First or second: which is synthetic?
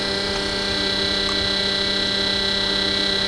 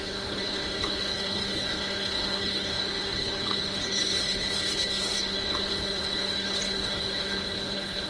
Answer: second